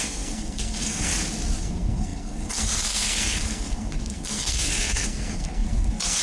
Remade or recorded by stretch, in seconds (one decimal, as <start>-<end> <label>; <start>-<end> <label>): 0.0-1.1 remade; 1.1-1.6 recorded; 1.6-6.2 remade